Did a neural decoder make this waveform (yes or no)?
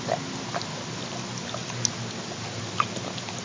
no